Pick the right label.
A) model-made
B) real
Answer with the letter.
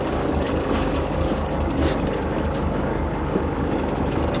A